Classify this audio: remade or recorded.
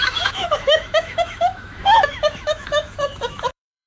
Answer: remade